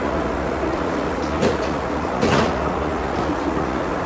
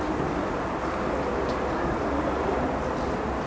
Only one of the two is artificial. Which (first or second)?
first